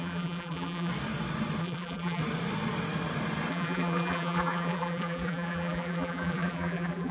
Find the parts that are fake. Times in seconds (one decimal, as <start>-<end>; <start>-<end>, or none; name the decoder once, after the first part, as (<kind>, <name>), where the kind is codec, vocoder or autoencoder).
0.0-0.9 (vocoder, BigVGAN v2); 1.6-2.2; 3.5-7.1